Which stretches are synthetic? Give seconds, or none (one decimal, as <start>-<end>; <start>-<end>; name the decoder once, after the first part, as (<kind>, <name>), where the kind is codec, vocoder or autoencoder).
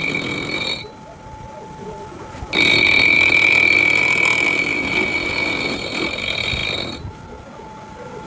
none